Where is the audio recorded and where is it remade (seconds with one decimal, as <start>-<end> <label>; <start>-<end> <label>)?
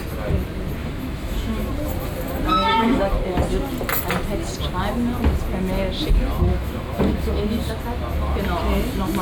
0.0-0.8 recorded; 0.8-1.7 remade; 1.7-2.6 recorded; 2.6-3.1 remade; 3.1-6.5 recorded; 6.5-7.7 remade; 7.7-9.2 recorded